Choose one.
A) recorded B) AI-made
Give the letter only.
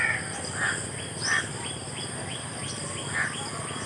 A